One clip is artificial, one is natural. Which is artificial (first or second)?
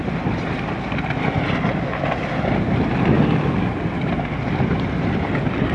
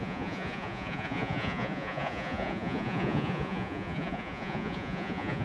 second